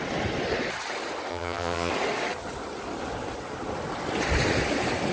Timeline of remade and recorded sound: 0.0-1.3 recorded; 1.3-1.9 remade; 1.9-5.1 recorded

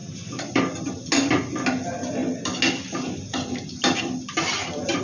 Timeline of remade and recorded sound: 0.0-0.6 remade; 0.6-3.8 recorded; 3.8-5.0 remade

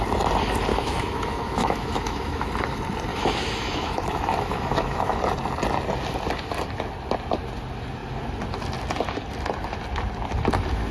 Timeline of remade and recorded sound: 0.0-0.7 recorded; 0.7-2.5 remade; 2.5-3.1 recorded; 3.1-5.2 remade; 5.2-10.9 recorded